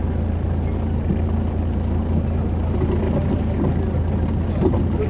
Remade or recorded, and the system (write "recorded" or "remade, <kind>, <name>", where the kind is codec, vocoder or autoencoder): recorded